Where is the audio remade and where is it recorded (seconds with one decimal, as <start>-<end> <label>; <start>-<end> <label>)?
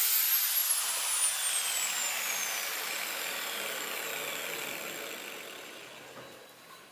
0.0-6.9 recorded